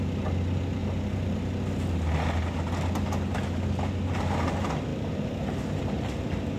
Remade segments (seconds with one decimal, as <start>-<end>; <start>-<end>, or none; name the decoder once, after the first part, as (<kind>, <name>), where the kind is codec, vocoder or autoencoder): 0.8-1.5 (vocoder, BigVGAN v2); 4.9-5.8